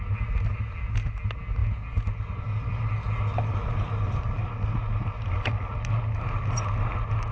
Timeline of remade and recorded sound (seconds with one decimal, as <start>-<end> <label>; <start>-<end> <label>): 0.0-7.3 recorded